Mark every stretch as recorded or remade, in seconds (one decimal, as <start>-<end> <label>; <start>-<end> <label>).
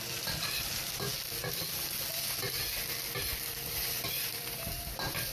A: 0.0-1.1 remade; 1.1-4.3 recorded; 4.3-5.3 remade